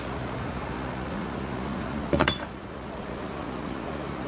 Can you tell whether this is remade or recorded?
remade